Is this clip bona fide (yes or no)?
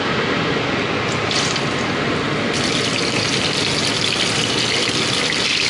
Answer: yes